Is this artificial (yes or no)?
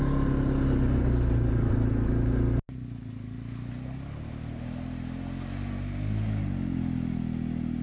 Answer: no